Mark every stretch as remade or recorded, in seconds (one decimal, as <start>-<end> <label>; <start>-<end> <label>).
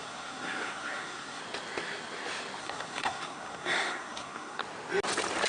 0.0-1.4 remade; 1.4-2.6 recorded; 2.6-4.6 remade; 4.6-5.5 recorded